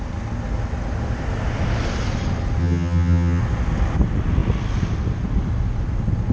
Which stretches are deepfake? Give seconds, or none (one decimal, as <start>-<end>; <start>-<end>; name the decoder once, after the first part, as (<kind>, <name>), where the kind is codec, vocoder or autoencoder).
2.6-3.4 (vocoder, HiFi-GAN)